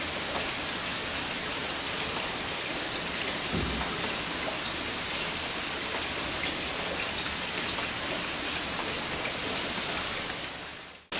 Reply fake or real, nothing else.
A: real